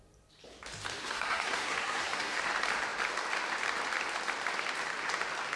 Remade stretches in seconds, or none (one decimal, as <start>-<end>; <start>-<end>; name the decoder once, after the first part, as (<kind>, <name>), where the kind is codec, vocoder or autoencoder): 1.0-2.4 (codec, SNAC)